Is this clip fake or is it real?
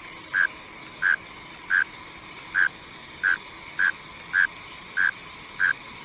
real